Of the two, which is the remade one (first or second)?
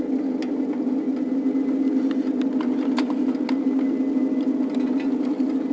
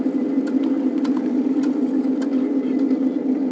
second